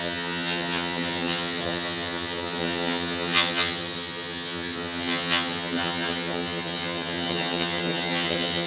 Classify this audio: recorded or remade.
remade